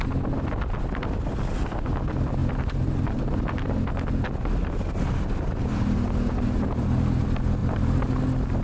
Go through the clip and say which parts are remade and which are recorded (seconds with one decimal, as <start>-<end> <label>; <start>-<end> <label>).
0.0-2.4 recorded; 2.4-3.4 remade; 3.4-7.6 recorded; 7.6-8.1 remade; 8.1-8.6 recorded